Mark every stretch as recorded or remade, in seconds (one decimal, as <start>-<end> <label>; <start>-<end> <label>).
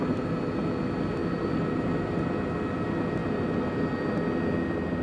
0.0-1.2 recorded; 1.2-2.3 remade; 2.3-5.0 recorded